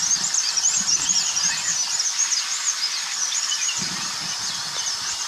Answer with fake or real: fake